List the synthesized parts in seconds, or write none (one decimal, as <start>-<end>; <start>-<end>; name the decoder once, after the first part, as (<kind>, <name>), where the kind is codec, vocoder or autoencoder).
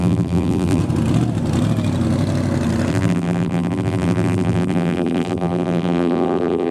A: 0.0-0.8 (vocoder, BigVGAN v2); 2.9-6.7